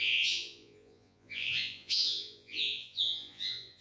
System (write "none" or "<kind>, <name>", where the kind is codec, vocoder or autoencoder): vocoder, Vocos